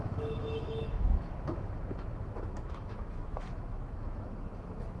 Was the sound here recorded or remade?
remade